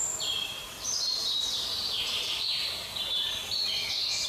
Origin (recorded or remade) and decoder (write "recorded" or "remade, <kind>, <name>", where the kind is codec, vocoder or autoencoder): remade, vocoder, BigVGAN v2